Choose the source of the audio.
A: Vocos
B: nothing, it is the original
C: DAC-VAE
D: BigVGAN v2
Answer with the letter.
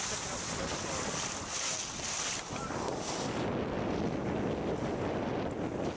B